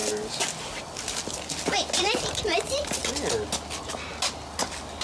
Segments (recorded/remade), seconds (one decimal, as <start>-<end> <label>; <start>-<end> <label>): 0.0-5.0 recorded